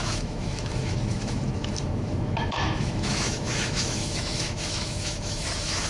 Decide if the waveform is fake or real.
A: fake